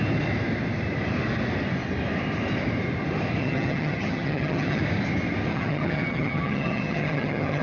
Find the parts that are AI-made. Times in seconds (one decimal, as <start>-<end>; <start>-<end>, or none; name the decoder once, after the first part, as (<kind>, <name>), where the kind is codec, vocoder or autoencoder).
3.4-4.8 (vocoder, HiFi-GAN); 5.5-7.6